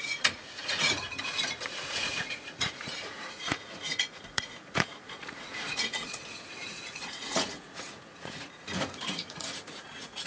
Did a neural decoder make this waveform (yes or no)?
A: yes